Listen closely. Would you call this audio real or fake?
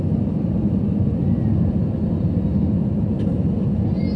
real